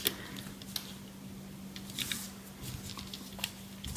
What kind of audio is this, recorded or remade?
recorded